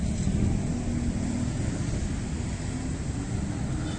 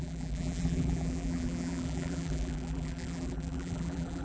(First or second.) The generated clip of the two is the second